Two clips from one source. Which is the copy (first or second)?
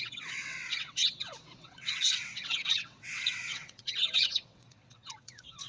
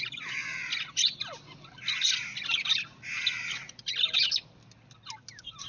first